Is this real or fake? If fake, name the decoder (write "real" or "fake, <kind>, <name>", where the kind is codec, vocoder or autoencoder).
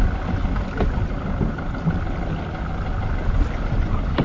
real